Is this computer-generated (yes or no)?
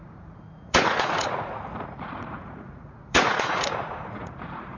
yes